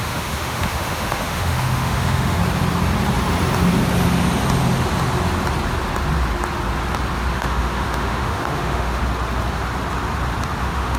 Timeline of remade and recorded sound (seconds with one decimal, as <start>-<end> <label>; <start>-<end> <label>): 0.0-2.4 remade; 2.4-7.3 recorded; 7.3-9.0 remade; 9.0-10.6 recorded; 10.6-11.0 remade